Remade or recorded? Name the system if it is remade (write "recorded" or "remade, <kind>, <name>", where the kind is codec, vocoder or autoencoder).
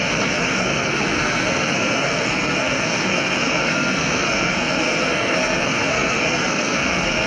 remade, codec, SNAC